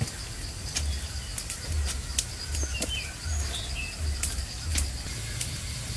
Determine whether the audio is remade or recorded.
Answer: recorded